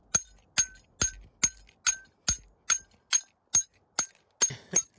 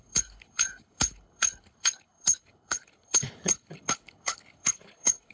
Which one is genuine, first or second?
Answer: first